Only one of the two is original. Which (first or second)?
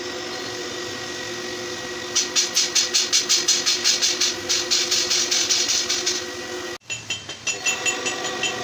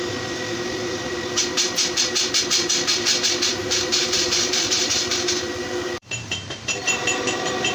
first